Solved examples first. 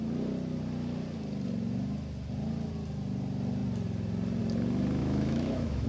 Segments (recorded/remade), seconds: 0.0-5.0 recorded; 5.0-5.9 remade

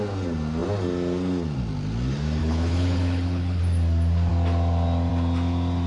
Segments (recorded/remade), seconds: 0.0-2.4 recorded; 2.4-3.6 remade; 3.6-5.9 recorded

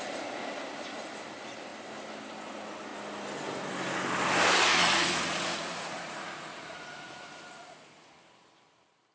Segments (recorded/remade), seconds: 0.0-4.7 recorded; 4.7-8.1 remade; 8.1-9.1 recorded